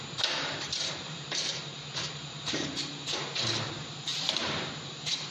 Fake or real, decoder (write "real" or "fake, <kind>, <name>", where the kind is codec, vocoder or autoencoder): fake, vocoder, BigVGAN v2